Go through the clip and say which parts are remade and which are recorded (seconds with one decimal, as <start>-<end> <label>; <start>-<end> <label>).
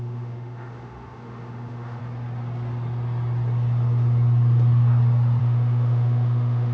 0.0-2.0 remade; 2.0-5.4 recorded; 5.4-6.7 remade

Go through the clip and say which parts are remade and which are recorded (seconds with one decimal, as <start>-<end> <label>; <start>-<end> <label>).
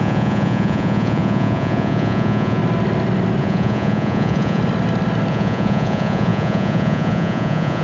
0.0-2.6 remade; 2.6-3.4 recorded; 3.4-4.6 remade; 4.6-5.3 recorded; 5.3-7.8 remade